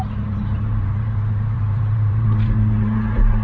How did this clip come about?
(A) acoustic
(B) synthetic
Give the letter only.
B